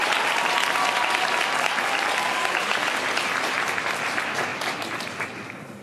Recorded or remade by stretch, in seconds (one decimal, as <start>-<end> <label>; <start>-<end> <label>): 0.0-2.2 recorded; 2.2-3.0 remade; 3.0-5.8 recorded